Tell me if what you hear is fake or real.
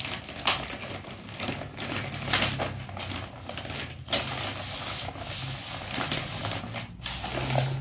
real